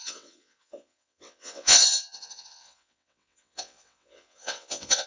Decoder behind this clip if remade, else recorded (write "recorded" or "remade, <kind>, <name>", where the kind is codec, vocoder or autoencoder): remade, vocoder, WaveNeXt